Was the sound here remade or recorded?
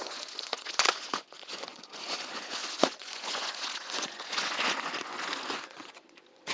remade